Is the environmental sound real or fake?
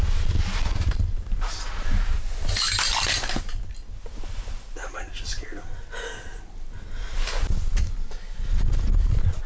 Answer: real